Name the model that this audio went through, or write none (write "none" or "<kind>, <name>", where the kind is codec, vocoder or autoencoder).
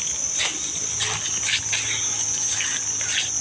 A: none